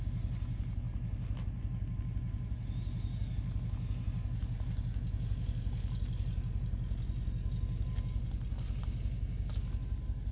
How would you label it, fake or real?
real